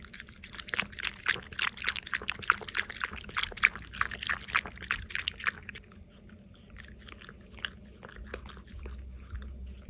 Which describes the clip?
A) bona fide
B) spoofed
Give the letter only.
A